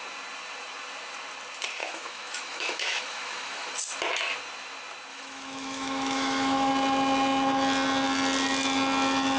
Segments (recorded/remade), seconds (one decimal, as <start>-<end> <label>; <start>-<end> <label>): 0.0-1.8 recorded; 1.8-3.7 remade; 3.7-5.1 recorded; 5.1-6.7 remade; 6.7-9.4 recorded